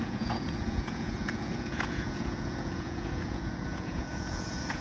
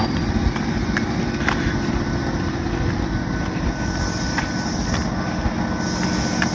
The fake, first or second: first